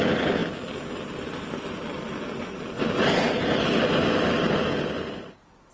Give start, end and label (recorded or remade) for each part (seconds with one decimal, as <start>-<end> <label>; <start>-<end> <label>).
0.0-5.7 recorded